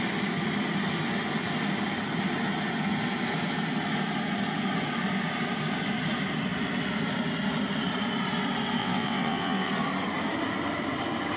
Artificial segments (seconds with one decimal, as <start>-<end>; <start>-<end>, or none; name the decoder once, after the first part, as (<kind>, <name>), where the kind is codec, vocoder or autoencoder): 8.8-9.7 (vocoder, WaveNeXt)